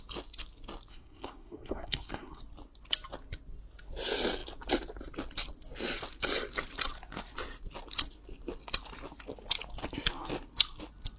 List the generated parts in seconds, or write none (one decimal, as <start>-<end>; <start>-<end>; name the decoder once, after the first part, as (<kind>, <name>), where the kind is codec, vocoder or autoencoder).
0.9-2.4 (codec, SNAC)